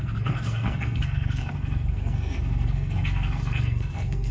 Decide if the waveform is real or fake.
fake